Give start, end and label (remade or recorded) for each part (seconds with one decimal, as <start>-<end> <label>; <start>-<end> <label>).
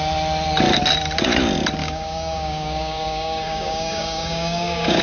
0.0-1.8 recorded; 1.8-5.0 remade